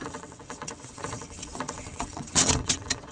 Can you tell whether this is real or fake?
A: fake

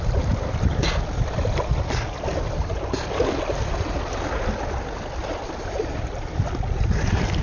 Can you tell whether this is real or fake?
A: real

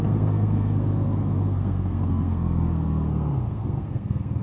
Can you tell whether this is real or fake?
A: fake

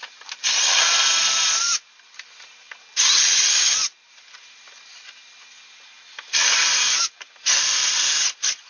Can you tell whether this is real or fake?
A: real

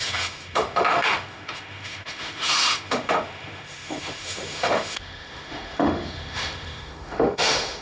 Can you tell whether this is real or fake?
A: fake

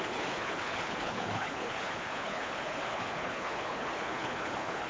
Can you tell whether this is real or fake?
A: fake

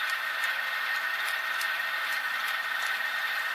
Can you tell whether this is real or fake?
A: real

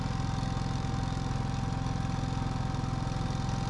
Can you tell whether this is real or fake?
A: real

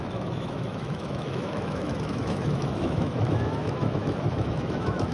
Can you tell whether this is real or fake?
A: fake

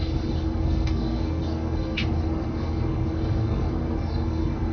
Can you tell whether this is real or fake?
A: fake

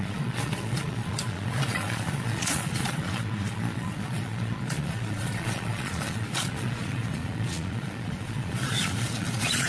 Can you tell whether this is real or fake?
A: fake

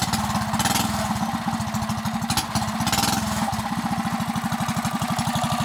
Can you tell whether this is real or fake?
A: real